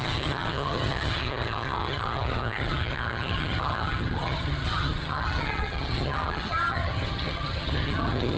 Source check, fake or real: fake